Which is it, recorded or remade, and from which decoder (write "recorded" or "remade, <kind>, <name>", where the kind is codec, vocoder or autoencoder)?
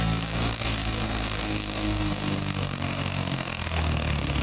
remade, codec, DAC